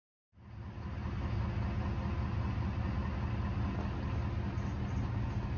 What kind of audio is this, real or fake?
real